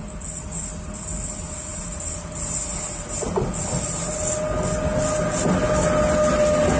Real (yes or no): yes